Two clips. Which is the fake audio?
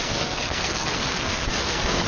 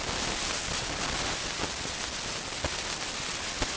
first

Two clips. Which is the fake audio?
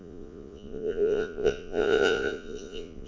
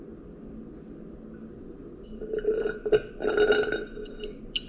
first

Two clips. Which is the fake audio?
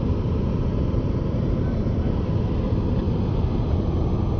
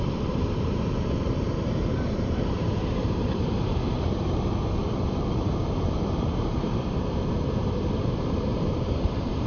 second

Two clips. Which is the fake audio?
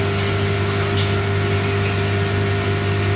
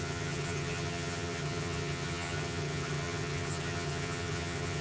second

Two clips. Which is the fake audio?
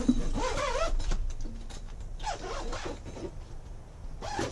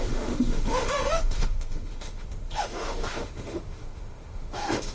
second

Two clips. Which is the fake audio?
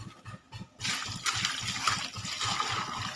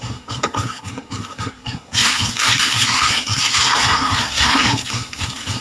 second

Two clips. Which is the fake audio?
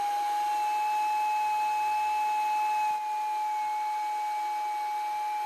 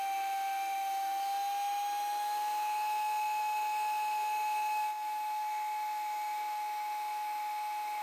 second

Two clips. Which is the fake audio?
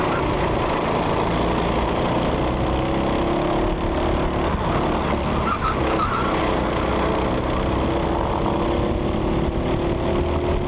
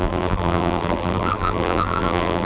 second